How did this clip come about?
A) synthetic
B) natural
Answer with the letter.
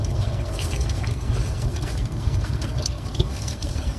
A